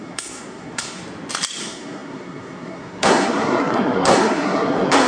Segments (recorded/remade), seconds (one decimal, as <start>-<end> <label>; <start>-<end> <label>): 0.0-1.0 remade; 1.0-1.6 recorded; 1.6-5.1 remade